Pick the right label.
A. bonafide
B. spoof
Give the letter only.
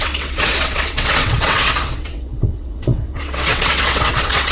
B